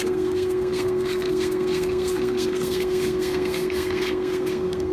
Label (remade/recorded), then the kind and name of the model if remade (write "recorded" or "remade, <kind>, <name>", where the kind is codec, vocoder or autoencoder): remade, codec, SNAC